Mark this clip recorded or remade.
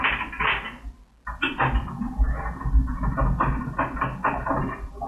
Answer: recorded